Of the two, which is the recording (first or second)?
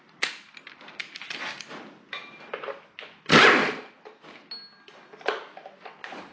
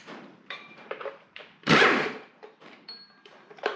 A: first